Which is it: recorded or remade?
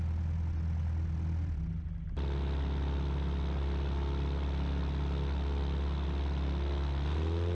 recorded